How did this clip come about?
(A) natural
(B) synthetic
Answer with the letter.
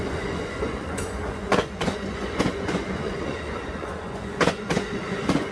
B